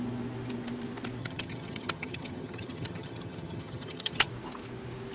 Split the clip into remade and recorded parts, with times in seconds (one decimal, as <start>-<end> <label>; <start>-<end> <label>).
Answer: 0.0-1.2 recorded; 1.2-4.3 remade; 4.3-5.1 recorded